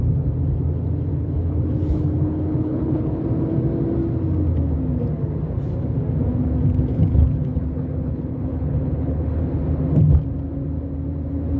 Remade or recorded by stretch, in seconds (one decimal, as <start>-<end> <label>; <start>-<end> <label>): 0.0-1.1 recorded; 1.1-3.2 remade; 3.2-6.9 recorded; 6.9-9.4 remade; 9.4-11.6 recorded